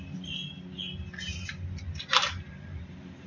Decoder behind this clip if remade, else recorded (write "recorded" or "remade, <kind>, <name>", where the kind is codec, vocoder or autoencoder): recorded